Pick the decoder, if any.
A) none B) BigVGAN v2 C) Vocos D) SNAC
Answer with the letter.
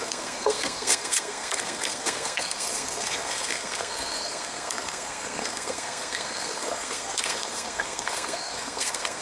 D